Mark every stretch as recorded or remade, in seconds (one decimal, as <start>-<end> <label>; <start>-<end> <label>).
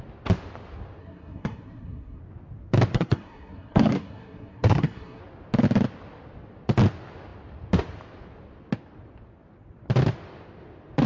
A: 0.0-1.0 recorded; 1.0-2.2 remade; 2.2-2.9 recorded; 2.9-5.2 remade; 5.2-11.1 recorded